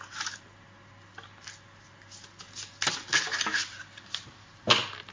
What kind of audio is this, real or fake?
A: real